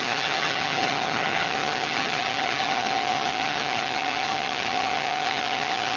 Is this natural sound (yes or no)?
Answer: no